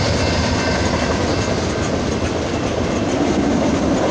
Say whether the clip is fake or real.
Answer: real